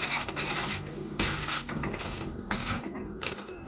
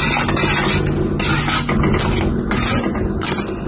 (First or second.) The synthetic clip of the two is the first